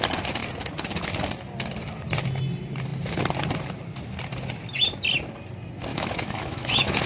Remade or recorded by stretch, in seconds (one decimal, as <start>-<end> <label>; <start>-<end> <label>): 0.0-5.9 recorded; 5.9-7.1 remade